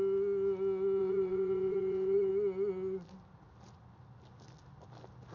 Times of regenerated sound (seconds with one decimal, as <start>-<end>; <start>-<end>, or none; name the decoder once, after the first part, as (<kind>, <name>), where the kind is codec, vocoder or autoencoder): 1.0-2.3 (vocoder, Vocos)